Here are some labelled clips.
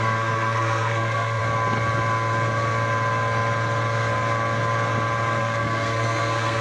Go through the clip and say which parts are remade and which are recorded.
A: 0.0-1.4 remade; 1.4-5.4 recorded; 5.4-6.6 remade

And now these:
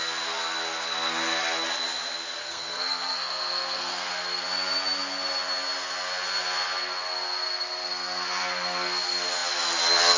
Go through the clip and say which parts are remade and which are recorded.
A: 0.0-2.4 recorded; 2.4-4.1 remade; 4.1-10.2 recorded

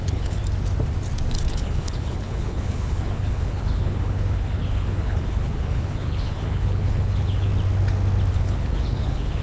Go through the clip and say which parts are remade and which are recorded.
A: 0.0-0.4 remade; 0.4-1.5 recorded; 1.5-7.5 remade; 7.5-8.3 recorded; 8.3-9.4 remade

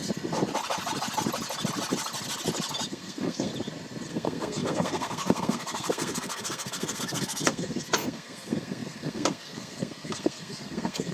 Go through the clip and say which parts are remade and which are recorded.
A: 0.0-2.9 recorded; 2.9-3.5 remade; 3.5-4.1 recorded; 4.1-11.1 remade

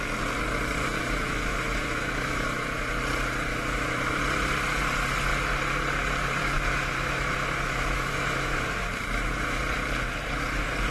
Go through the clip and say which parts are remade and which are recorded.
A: 0.0-0.8 recorded; 0.8-2.8 remade; 2.8-3.5 recorded; 3.5-4.2 remade; 4.2-6.4 recorded; 6.4-9.6 remade; 9.6-10.9 recorded

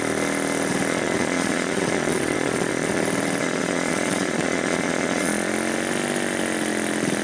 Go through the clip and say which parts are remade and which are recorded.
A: 0.0-0.9 recorded; 0.9-3.0 remade; 3.0-3.4 recorded; 3.4-5.5 remade; 5.5-7.2 recorded